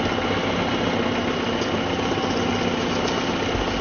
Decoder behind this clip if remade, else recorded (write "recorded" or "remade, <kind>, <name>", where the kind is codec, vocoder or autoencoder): recorded